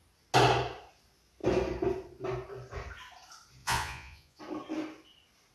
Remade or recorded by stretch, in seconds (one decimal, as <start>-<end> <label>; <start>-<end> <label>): 0.0-3.6 recorded; 3.6-4.4 remade; 4.4-5.5 recorded